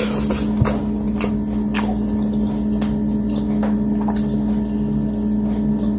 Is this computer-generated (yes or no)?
no